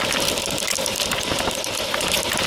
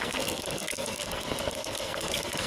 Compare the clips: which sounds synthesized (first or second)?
second